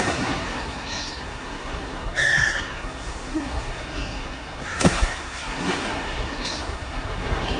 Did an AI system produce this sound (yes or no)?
yes